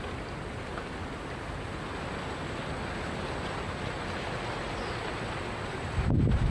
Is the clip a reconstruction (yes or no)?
no